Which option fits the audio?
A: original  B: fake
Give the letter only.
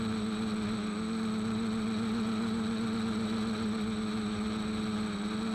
A